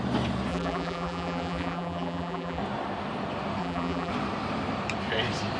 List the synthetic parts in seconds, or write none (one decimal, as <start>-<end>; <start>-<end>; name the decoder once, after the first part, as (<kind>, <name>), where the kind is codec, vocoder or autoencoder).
0.5-2.6 (vocoder, BigVGAN v2); 3.6-4.1